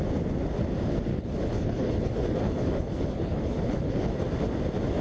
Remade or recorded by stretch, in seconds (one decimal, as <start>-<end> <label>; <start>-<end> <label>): 0.0-1.1 recorded; 1.1-4.1 remade; 4.1-5.0 recorded